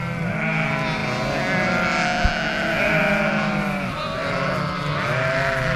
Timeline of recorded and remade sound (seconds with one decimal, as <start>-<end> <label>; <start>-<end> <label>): 0.0-5.8 recorded